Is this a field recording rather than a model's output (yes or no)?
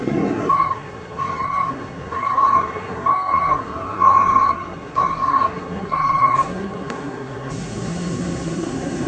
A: no